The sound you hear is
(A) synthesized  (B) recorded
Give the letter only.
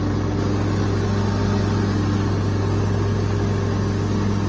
B